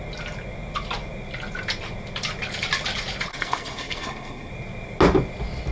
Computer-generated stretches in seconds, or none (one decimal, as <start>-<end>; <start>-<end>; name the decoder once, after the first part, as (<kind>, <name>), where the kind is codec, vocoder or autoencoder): 3.3-4.5 (codec, SNAC)